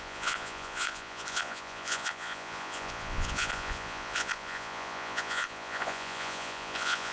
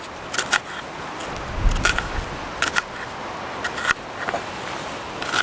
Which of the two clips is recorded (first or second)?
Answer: second